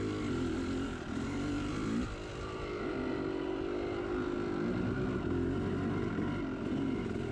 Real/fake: real